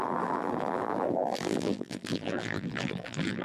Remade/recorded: remade